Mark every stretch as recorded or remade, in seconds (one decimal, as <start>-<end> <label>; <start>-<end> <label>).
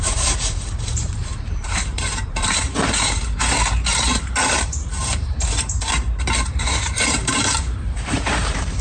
0.0-8.8 remade